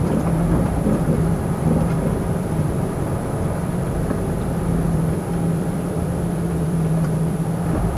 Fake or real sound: fake